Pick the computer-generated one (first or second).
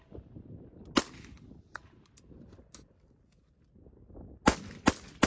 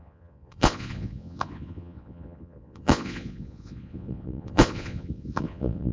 second